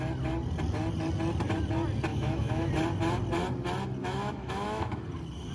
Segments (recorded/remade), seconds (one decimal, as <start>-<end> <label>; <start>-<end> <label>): 0.0-2.1 recorded; 2.1-2.7 remade; 2.7-4.0 recorded; 4.0-5.0 remade; 5.0-5.5 recorded

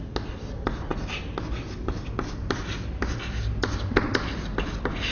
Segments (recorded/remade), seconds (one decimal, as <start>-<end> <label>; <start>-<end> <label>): 0.0-5.1 recorded

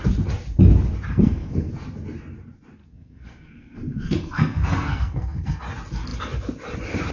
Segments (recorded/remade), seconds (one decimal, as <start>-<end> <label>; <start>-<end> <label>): 0.0-1.1 recorded; 1.1-1.7 remade; 1.7-2.8 recorded; 2.8-5.6 remade; 5.6-7.1 recorded

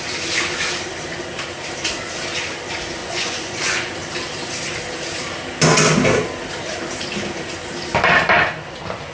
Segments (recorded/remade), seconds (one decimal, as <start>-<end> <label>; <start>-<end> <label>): 0.0-3.0 recorded; 3.0-3.9 remade; 3.9-9.1 recorded

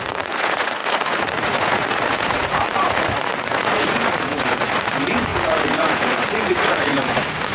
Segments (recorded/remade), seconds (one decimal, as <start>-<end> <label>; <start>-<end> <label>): 0.0-7.5 remade

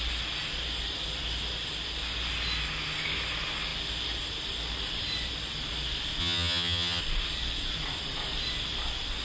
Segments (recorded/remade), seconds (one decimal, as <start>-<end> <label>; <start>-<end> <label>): 0.0-6.2 recorded; 6.2-7.0 remade; 7.0-9.2 recorded

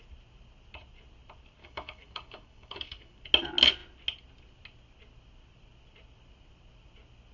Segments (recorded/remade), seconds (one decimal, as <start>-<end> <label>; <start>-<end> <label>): 0.0-1.6 recorded; 1.6-3.2 remade; 3.2-7.3 recorded